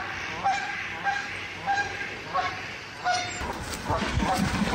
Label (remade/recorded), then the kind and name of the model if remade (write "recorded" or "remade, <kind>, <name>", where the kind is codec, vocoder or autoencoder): recorded